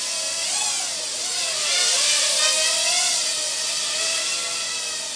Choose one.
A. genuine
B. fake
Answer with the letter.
A